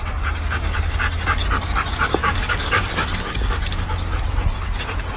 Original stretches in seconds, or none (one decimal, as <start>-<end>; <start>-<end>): 0.0-2.2; 2.9-5.2